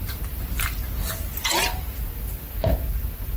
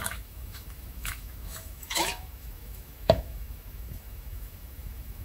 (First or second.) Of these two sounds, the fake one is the second